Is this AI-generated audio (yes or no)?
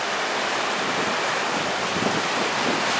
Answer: no